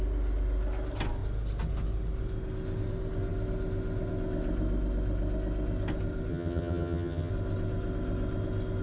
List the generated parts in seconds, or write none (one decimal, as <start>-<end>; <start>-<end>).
6.3-7.3